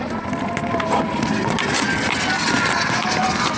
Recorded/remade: recorded